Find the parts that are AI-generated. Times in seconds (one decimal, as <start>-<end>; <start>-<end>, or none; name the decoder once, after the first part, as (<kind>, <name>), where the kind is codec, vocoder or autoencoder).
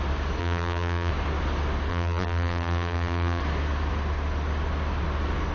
0.4-1.1 (vocoder, BigVGAN v2); 1.9-3.4